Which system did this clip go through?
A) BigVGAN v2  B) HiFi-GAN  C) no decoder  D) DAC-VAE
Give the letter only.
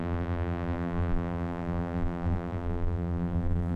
A